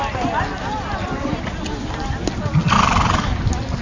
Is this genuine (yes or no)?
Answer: yes